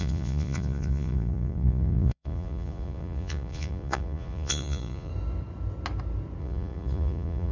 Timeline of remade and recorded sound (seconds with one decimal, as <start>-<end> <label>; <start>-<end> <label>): 0.0-5.1 remade; 5.1-6.4 recorded; 6.4-7.5 remade

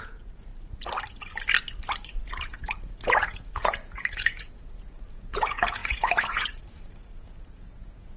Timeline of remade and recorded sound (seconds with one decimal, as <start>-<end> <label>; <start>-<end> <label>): 0.0-0.5 remade; 0.5-2.1 recorded; 2.1-8.2 remade

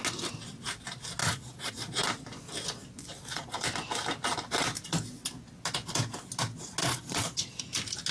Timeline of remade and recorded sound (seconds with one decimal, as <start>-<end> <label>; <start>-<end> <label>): 0.0-1.2 recorded; 1.2-1.7 remade; 1.7-3.0 recorded; 3.0-3.5 remade; 3.5-6.8 recorded; 6.8-7.6 remade; 7.6-8.1 recorded

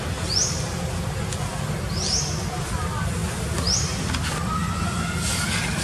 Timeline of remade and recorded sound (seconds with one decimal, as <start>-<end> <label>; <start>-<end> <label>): 0.0-5.8 recorded